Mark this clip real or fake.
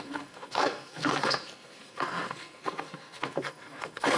fake